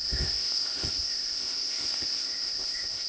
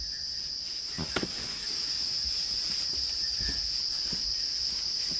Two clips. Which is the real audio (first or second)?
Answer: second